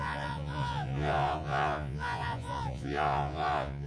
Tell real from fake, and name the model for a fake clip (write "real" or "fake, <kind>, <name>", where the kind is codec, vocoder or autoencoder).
fake, vocoder, Vocos